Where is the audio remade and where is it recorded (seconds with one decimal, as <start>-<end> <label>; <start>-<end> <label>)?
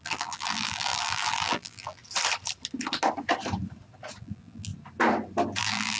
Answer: 0.0-2.0 remade; 2.0-4.2 recorded; 4.2-4.7 remade; 4.7-5.6 recorded; 5.6-6.0 remade